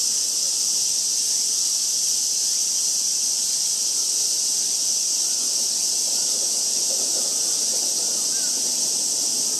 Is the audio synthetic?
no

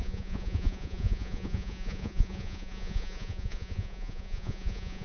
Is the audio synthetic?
yes